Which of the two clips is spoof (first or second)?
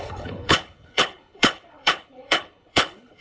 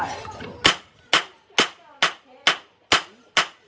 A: first